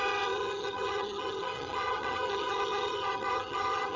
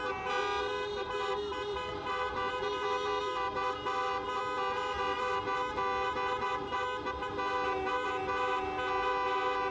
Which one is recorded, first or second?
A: second